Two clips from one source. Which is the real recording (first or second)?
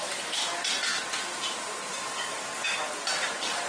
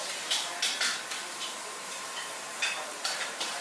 first